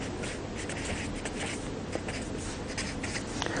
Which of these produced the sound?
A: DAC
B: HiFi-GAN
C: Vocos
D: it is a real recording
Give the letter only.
D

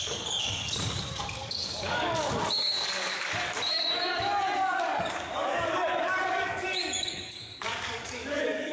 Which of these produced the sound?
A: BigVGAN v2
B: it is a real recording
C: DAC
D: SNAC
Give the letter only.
C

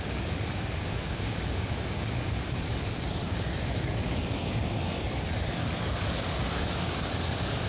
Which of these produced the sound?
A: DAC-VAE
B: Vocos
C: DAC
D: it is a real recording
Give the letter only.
C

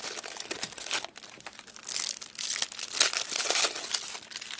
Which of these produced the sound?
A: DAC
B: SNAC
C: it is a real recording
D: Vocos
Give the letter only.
C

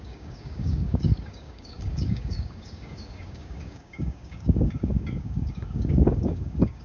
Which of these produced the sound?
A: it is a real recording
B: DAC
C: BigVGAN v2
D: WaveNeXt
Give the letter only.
B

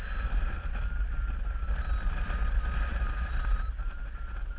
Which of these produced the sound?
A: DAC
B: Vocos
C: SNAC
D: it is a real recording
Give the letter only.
D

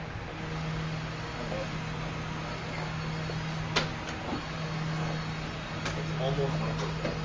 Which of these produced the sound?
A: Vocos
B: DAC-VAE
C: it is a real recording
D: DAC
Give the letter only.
C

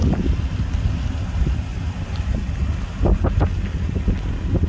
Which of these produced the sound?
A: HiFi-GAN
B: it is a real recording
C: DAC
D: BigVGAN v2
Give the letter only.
B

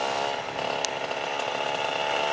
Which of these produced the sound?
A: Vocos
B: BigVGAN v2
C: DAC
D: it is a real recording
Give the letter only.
D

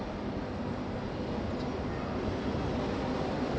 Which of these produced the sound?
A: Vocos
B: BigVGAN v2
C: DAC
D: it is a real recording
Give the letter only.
D